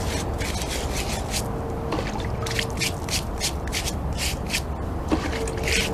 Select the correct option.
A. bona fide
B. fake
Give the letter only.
B